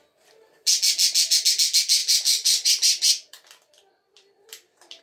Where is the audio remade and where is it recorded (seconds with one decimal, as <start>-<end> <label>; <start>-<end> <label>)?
0.0-2.0 recorded; 2.0-5.0 remade